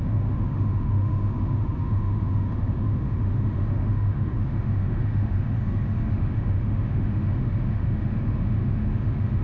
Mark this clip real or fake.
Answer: fake